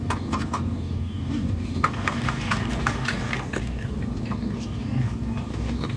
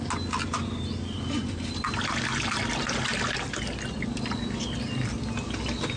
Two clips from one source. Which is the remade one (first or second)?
first